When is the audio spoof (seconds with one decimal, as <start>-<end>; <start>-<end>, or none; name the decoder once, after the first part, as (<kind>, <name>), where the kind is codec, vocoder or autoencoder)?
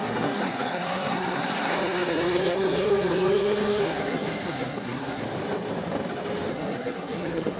0.0-5.2 (codec, SNAC); 6.5-7.6